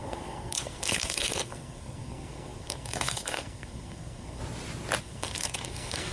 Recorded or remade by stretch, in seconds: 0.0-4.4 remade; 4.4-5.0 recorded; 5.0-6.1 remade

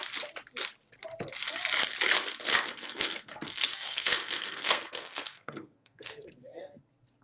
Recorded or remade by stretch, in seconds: 0.0-2.5 recorded; 2.5-6.8 remade; 6.8-7.2 recorded